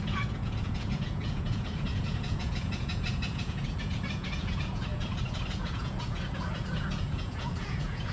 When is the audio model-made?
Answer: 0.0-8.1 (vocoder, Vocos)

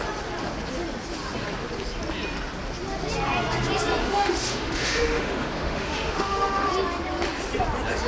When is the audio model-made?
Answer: 4.0-6.7 (autoencoder, DAC-VAE)